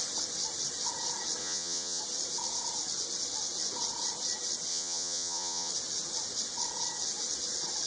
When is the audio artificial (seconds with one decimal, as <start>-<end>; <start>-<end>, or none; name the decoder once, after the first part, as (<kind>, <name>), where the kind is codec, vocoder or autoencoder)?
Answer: 1.4-2.0 (vocoder, Vocos); 4.7-5.7

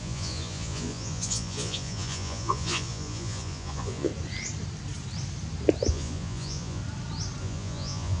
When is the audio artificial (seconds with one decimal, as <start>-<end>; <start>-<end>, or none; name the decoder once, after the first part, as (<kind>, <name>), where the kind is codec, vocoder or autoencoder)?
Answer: 0.0-4.1 (vocoder, Vocos); 5.9-6.8; 7.4-8.2